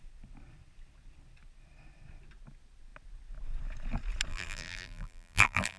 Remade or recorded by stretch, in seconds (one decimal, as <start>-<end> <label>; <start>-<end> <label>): 0.0-4.3 recorded; 4.3-5.8 remade

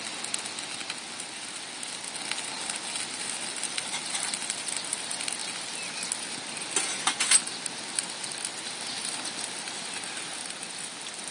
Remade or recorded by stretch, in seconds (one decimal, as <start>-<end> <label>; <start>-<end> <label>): 0.0-11.3 recorded

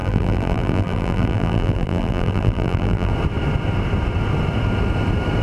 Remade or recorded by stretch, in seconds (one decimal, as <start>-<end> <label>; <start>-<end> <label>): 0.0-3.1 remade; 3.1-5.4 recorded

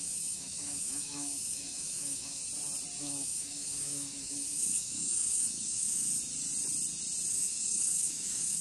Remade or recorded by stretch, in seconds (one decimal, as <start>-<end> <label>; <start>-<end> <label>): 0.0-2.4 remade; 2.4-3.0 recorded; 3.0-6.1 remade; 6.1-7.3 recorded; 7.3-8.6 remade

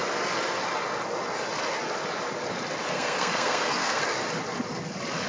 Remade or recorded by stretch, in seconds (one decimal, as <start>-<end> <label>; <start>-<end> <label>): 0.0-2.9 recorded; 2.9-4.0 remade; 4.0-5.3 recorded

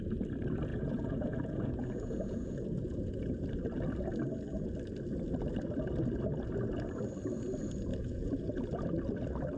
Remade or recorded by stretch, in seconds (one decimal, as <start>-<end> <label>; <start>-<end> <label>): 0.0-0.7 recorded; 0.7-3.5 remade; 3.5-7.9 recorded; 7.9-8.6 remade; 8.6-9.6 recorded

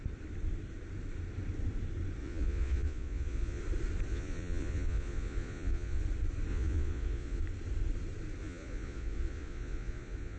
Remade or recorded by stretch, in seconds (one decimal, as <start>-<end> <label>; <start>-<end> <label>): 0.0-2.2 recorded; 2.2-3.6 remade; 3.6-4.1 recorded; 4.1-6.0 remade; 6.0-6.5 recorded; 6.5-7.4 remade; 7.4-8.4 recorded; 8.4-10.4 remade